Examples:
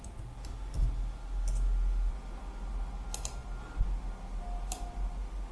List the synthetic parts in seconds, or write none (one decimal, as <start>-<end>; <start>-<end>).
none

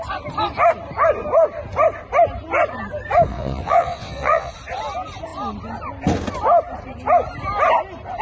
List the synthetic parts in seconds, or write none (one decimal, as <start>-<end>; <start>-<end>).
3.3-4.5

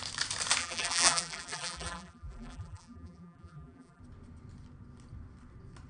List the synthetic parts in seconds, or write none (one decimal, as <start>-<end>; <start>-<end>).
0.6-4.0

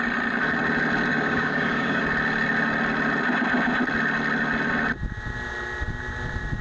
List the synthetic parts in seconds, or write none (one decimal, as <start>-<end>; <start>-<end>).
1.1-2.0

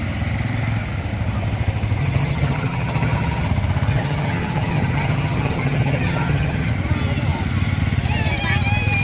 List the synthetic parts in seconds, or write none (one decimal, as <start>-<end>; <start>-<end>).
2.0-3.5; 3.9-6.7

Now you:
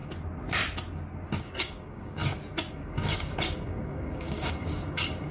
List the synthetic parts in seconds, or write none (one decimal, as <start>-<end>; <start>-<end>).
1.4-2.2; 2.7-5.3

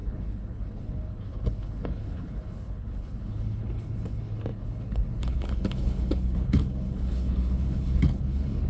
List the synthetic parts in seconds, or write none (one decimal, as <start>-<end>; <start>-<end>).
0.0-8.7